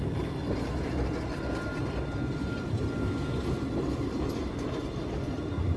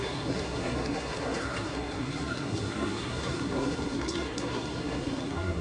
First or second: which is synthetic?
second